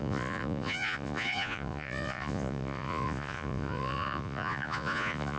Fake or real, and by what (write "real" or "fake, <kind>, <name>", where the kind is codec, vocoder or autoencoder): fake, vocoder, Vocos